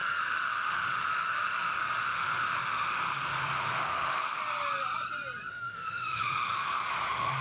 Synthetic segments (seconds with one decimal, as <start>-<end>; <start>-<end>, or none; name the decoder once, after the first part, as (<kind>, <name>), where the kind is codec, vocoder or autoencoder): 0.0-4.4 (autoencoder, DAC-VAE); 5.5-7.4